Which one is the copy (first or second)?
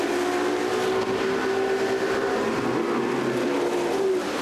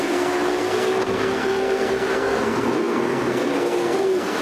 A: second